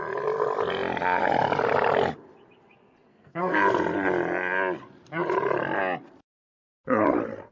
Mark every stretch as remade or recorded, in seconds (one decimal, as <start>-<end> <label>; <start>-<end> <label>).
0.0-3.1 recorded; 3.1-3.6 remade; 3.6-7.5 recorded